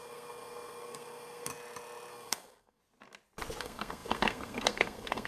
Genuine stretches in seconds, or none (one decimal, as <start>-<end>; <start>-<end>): 1.5-2.1; 2.8-3.6